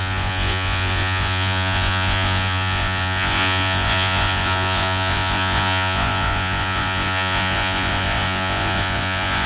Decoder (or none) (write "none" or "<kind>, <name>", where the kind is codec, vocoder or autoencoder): vocoder, Vocos